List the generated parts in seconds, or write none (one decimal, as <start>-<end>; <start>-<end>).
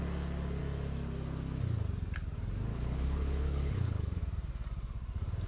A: 2.7-4.2